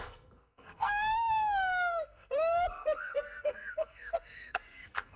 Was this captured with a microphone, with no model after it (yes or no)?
no